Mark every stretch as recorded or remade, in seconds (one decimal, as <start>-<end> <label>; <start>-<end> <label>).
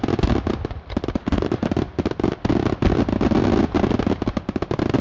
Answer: 0.0-1.2 recorded; 1.2-1.7 remade; 1.7-5.0 recorded